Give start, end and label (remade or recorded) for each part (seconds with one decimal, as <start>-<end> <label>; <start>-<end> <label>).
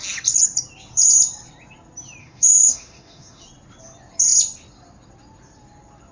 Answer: 0.0-2.2 recorded; 2.2-3.4 remade; 3.4-6.1 recorded